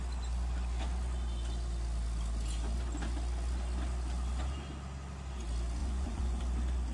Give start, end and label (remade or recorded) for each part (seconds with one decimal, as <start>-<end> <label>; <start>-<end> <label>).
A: 0.0-5.8 recorded; 5.8-6.4 remade; 6.4-6.9 recorded